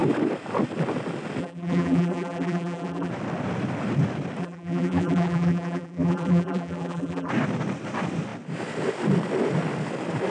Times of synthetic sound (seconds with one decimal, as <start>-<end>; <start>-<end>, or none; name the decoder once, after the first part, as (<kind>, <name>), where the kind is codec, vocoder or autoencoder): 1.4-3.1 (vocoder, BigVGAN v2); 4.4-7.3